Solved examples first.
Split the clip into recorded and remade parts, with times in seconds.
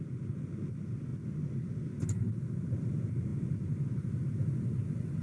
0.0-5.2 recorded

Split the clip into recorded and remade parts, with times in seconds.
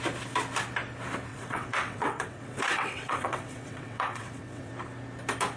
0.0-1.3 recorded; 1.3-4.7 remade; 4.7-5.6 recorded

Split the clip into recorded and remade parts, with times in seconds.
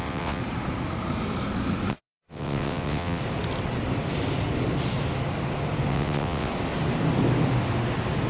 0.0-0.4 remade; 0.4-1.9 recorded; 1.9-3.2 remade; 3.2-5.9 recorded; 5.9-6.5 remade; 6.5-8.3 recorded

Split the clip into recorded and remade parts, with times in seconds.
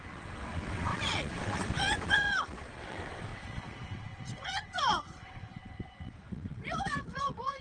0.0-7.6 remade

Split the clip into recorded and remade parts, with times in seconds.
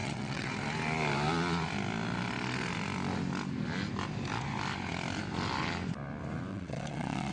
0.0-0.5 remade; 0.5-6.5 recorded; 6.5-7.3 remade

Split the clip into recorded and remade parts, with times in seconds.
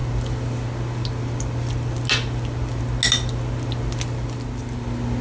0.0-5.2 recorded